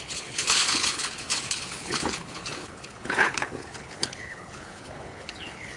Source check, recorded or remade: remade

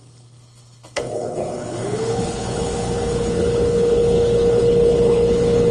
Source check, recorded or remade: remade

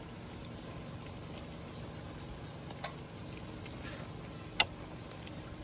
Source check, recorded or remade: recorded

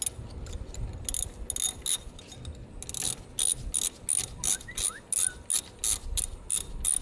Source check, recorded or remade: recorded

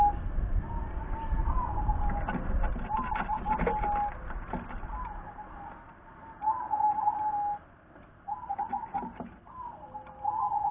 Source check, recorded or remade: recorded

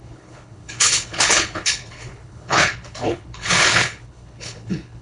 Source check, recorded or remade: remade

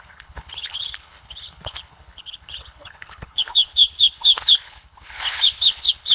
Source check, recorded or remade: remade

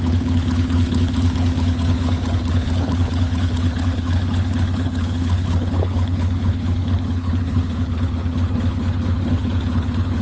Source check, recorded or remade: remade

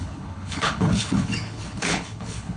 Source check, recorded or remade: remade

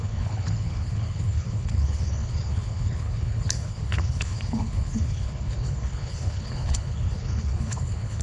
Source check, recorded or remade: remade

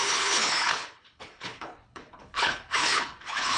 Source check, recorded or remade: remade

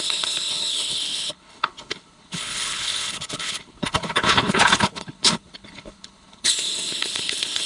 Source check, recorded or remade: remade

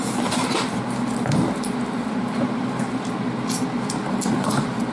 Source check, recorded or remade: recorded